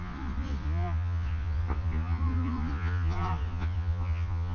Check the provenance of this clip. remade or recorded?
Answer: remade